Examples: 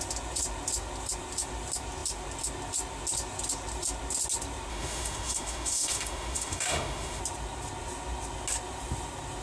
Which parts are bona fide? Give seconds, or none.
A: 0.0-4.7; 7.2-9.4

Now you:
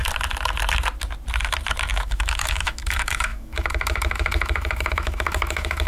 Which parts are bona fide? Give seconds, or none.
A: 0.0-1.9

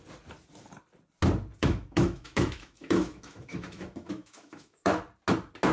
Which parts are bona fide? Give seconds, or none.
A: 0.0-1.6; 5.0-5.7